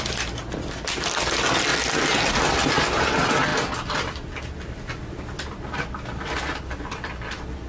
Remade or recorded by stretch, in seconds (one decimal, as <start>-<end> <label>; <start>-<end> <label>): 0.0-7.7 recorded